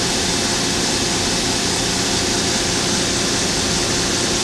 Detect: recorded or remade recorded